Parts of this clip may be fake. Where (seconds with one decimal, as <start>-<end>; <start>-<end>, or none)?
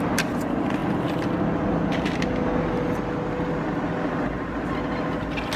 none